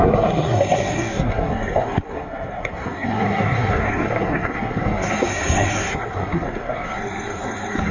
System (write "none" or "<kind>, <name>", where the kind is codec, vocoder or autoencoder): codec, SNAC